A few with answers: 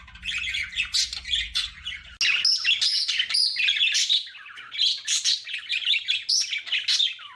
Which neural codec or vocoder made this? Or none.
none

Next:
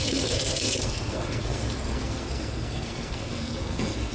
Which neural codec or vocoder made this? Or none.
codec, SNAC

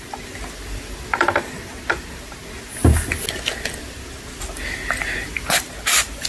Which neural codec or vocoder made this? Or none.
none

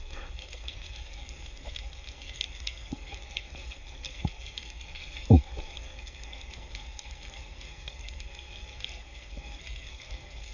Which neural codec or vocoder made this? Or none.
codec, SNAC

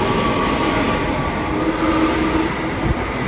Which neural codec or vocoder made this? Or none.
none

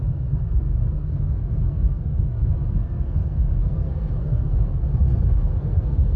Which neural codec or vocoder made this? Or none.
codec, SNAC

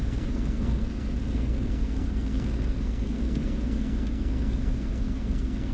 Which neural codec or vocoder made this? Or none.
codec, SNAC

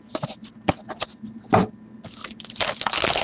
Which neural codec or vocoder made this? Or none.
none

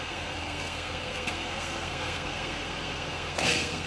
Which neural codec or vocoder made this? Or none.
codec, SNAC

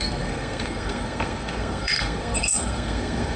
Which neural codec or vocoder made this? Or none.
codec, SNAC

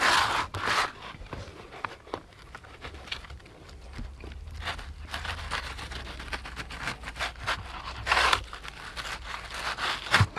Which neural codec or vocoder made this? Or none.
none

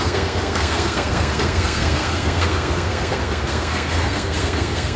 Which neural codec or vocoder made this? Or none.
codec, SNAC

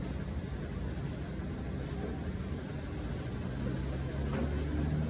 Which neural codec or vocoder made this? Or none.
none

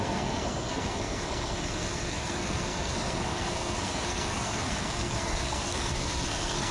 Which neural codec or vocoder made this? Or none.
codec, SNAC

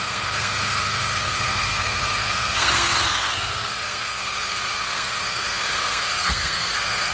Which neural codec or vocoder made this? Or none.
codec, SNAC